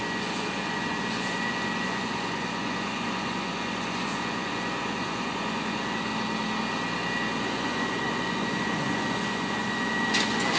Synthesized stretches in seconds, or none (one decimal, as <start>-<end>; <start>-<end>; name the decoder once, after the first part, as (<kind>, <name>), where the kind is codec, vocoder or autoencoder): 0.0-6.1 (vocoder, Vocos); 7.4-10.6